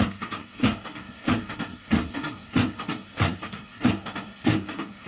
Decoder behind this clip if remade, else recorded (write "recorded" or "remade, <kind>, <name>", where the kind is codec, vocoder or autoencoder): remade, codec, SNAC